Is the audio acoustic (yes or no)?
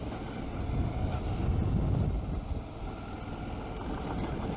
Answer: yes